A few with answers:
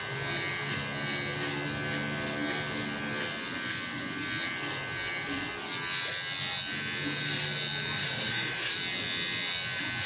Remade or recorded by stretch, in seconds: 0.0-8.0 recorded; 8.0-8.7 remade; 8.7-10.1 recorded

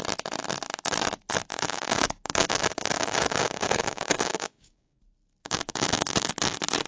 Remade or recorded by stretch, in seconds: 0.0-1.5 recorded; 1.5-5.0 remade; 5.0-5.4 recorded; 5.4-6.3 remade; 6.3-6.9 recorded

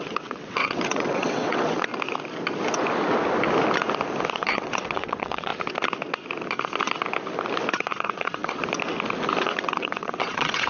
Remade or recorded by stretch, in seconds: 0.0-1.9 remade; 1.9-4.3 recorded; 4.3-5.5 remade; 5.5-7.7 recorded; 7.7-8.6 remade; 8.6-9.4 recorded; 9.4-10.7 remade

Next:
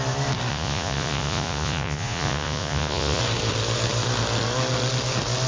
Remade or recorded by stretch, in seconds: 0.0-0.5 recorded; 0.5-3.2 remade; 3.2-5.5 recorded

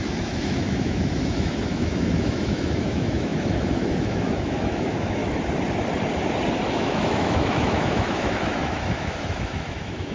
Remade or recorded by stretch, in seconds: 0.0-5.2 remade; 5.2-6.7 recorded; 6.7-10.1 remade

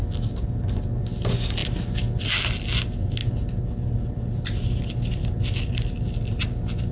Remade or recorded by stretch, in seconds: 0.0-6.9 recorded